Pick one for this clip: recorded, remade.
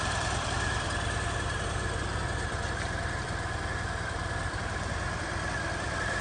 remade